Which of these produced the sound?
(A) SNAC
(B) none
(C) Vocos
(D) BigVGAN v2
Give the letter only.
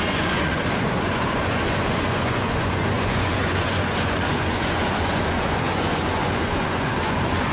C